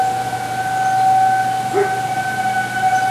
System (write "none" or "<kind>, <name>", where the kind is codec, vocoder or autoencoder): none